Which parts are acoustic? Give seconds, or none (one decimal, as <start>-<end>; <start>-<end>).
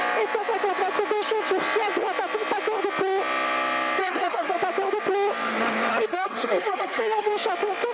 0.0-4.0; 4.5-5.9; 7.3-7.9